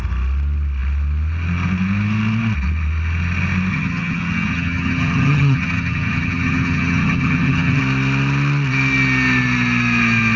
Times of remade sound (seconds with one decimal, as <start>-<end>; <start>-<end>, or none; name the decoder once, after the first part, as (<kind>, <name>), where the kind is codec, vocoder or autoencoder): 3.7-7.8 (vocoder, HiFi-GAN)